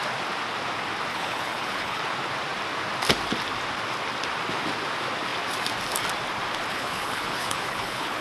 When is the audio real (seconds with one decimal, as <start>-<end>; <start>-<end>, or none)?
0.0-1.1; 2.0-6.7